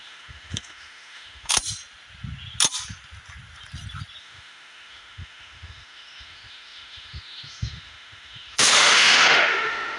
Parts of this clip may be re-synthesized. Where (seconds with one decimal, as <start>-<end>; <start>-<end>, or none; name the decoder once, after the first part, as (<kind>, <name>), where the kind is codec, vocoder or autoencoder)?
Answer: 0.0-1.6 (autoencoder, DAC-VAE); 4.2-10.0